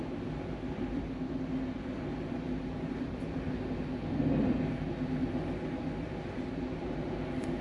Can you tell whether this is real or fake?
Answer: real